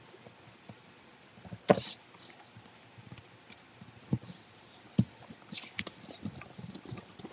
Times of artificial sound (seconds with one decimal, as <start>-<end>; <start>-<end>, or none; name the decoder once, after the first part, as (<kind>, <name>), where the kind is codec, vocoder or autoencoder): none